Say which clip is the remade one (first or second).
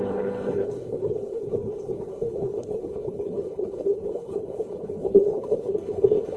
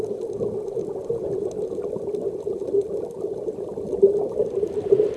first